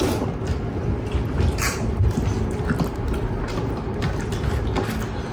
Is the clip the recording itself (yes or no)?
yes